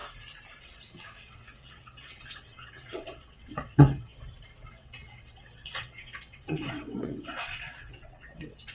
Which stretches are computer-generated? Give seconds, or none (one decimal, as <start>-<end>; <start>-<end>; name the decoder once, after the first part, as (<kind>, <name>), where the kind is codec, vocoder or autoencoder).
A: 0.6-4.1 (vocoder, WaveNeXt); 4.7-8.7